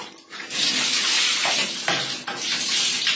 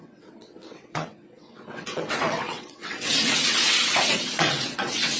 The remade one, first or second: second